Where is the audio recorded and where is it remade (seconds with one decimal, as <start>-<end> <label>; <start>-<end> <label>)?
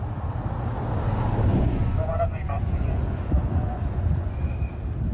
0.0-1.5 recorded; 1.5-4.5 remade; 4.5-5.1 recorded